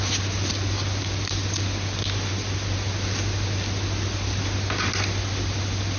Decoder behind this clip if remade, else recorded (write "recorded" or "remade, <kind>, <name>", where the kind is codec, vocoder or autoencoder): recorded